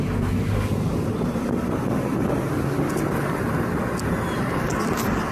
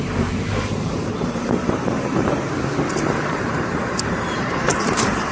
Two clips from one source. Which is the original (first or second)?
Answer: first